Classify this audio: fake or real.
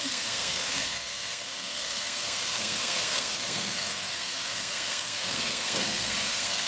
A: fake